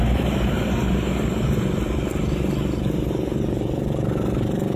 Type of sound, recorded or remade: recorded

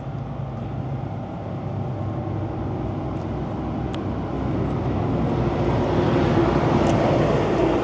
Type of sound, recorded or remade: recorded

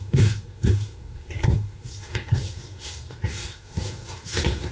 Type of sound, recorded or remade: remade